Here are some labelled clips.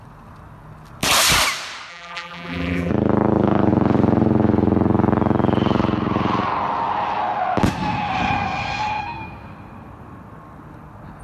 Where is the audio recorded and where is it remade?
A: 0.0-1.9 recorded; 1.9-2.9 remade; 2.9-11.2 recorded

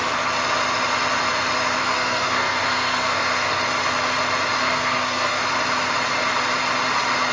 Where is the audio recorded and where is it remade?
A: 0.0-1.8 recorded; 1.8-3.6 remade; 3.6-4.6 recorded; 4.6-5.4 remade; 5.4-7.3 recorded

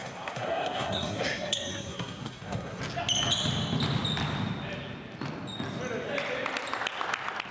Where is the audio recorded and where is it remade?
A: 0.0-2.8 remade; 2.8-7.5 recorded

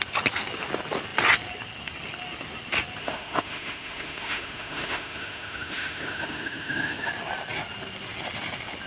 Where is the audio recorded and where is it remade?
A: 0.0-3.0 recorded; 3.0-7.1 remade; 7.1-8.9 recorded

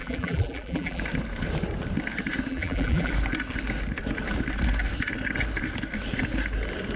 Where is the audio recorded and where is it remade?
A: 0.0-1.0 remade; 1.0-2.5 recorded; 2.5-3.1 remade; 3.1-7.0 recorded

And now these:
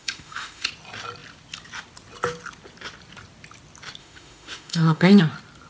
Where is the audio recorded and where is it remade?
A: 0.0-0.7 remade; 0.7-4.0 recorded; 4.0-5.2 remade; 5.2-5.7 recorded